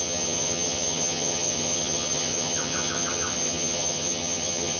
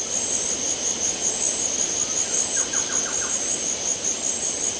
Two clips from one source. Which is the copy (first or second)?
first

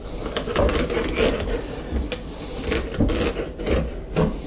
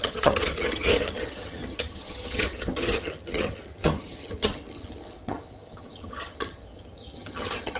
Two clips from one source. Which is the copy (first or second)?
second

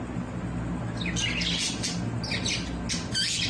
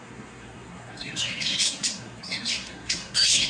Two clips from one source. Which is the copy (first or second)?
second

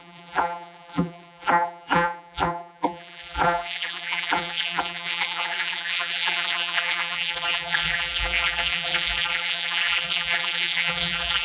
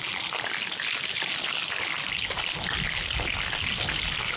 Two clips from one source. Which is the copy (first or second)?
first